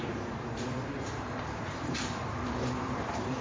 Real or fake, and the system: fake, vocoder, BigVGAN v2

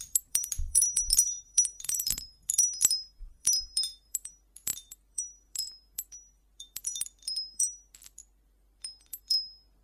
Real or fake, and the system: fake, vocoder, BigVGAN v2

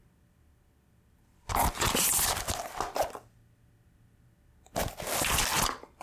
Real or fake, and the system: real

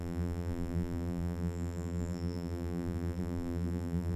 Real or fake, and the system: fake, vocoder, BigVGAN v2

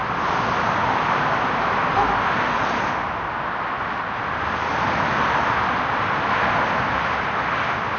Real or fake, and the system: real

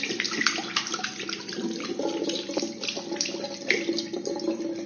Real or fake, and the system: real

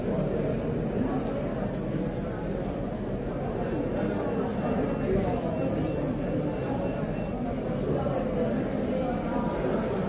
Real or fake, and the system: real